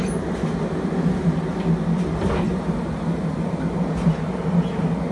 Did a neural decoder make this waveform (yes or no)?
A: no